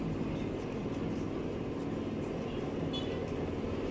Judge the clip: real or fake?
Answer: real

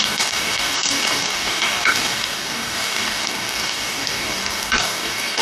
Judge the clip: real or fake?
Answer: fake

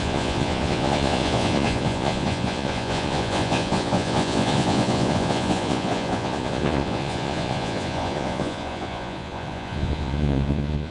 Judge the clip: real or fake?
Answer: fake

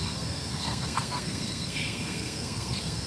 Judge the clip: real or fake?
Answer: fake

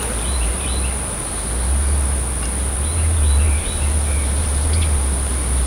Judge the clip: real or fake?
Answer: real